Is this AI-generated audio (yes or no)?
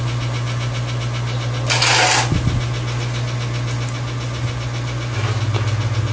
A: no